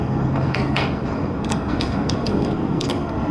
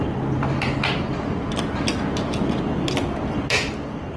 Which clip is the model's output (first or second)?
first